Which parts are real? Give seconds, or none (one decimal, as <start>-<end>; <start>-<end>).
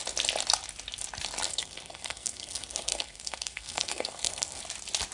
0.0-1.5; 4.6-5.1